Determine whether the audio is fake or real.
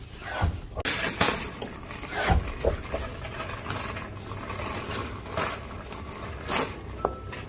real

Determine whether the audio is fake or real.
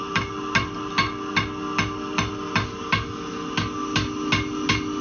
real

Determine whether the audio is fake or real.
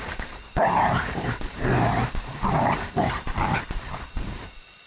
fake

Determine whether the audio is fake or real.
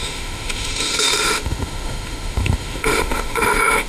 fake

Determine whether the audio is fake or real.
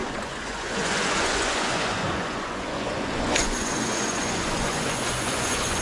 fake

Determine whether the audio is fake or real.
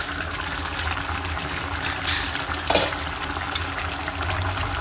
real